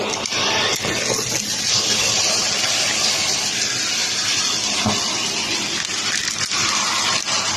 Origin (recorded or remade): recorded